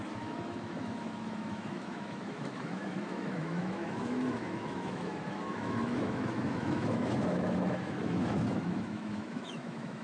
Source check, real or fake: fake